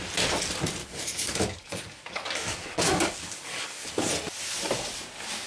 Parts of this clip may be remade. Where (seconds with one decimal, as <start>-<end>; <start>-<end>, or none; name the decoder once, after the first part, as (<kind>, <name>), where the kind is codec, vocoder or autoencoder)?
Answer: 0.8-4.1 (codec, DAC)